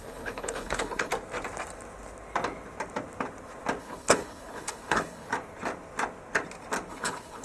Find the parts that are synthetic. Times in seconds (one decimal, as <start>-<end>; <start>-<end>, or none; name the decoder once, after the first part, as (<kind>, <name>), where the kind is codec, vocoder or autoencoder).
0.0-1.1 (codec, HILCodec); 3.8-5.3; 6.9-7.4